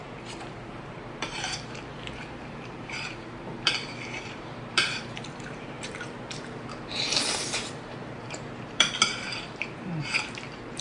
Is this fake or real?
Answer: fake